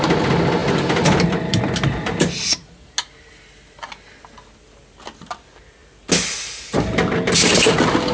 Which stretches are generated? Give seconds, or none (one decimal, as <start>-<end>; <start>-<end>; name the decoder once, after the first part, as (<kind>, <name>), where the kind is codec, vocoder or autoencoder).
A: 0.6-1.6 (vocoder, BigVGAN v2)